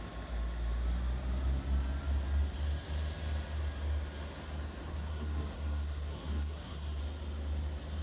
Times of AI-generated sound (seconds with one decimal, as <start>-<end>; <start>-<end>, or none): 4.9-7.0

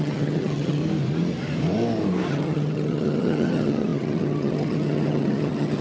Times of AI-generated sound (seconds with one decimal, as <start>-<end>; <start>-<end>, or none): 0.0-0.8; 2.3-5.8

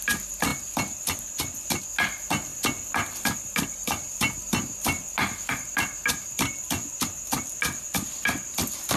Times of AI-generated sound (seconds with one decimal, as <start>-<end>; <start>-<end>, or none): none

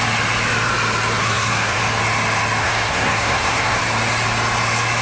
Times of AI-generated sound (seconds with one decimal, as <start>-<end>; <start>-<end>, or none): 1.2-1.8; 2.6-3.8

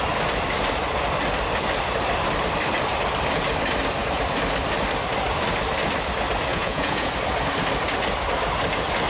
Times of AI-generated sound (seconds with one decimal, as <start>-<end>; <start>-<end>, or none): 6.5-7.1

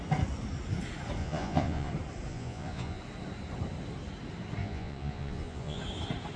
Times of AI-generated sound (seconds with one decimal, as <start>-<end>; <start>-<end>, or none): 1.2-1.9; 2.3-3.0; 4.6-5.8

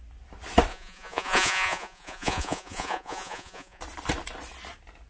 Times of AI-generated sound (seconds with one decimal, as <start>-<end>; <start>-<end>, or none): 0.7-3.8

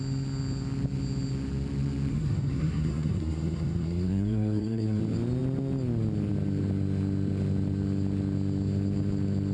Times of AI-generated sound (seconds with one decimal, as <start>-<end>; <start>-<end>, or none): 2.1-5.0